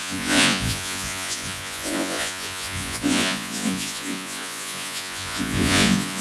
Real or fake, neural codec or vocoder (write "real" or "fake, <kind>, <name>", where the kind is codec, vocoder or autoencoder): fake, vocoder, Vocos